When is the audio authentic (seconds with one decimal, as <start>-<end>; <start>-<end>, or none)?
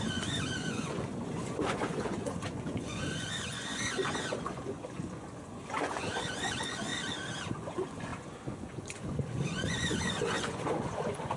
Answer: 6.9-7.5